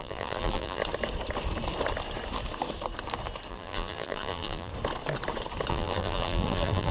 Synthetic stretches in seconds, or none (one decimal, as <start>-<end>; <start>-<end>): 0.0-0.8; 3.5-4.7; 5.7-6.9